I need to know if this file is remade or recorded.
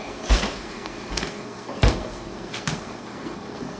remade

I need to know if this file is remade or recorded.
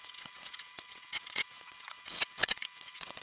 remade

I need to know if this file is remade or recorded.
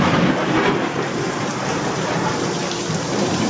remade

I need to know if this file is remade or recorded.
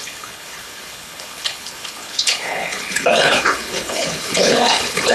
remade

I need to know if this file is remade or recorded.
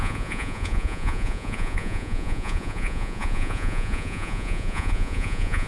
remade